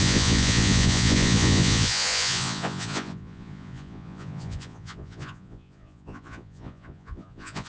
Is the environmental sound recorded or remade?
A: remade